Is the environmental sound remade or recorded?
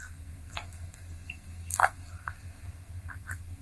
remade